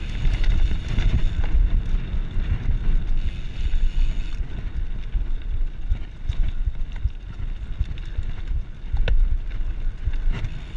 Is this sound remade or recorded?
recorded